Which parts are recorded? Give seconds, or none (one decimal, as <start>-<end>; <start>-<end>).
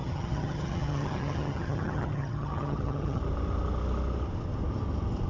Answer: 3.2-5.3